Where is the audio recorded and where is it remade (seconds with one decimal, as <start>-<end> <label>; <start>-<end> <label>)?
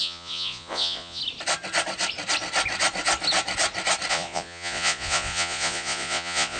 0.0-1.2 remade; 1.2-4.1 recorded; 4.1-6.6 remade